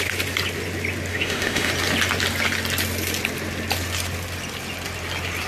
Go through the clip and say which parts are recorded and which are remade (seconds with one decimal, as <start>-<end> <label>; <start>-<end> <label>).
0.0-1.1 recorded; 1.1-1.7 remade; 1.7-5.5 recorded